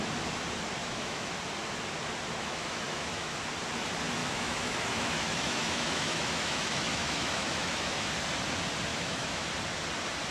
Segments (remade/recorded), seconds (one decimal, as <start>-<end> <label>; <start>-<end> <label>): 0.0-0.8 recorded; 0.8-1.3 remade; 1.3-2.4 recorded; 2.4-3.4 remade; 3.4-4.2 recorded; 4.2-8.1 remade; 8.1-8.9 recorded; 8.9-9.5 remade; 9.5-10.3 recorded